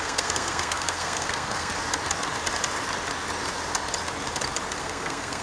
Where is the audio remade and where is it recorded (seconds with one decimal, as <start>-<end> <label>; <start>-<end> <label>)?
0.0-1.7 remade; 1.7-4.8 recorded; 4.8-5.4 remade